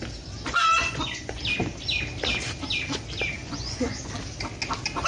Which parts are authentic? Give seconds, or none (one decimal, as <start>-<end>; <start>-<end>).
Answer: 0.0-0.5; 1.4-3.4; 4.1-5.1